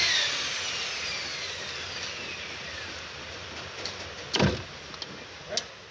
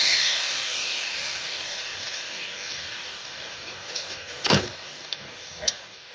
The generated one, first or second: second